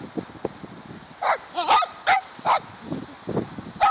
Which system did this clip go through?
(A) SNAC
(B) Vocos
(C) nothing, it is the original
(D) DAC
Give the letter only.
C